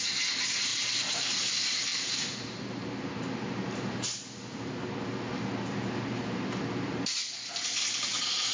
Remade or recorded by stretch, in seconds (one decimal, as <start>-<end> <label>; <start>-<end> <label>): 0.0-0.7 recorded; 0.7-1.5 remade; 1.5-1.9 recorded; 1.9-4.8 remade; 4.8-8.5 recorded

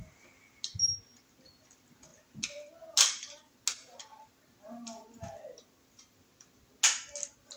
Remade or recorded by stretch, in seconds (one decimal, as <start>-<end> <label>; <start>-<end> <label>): 0.0-7.6 recorded